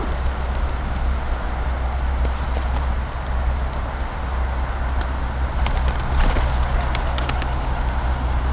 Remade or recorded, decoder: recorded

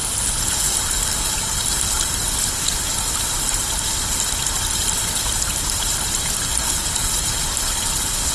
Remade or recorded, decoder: recorded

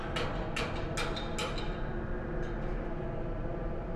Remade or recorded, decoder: recorded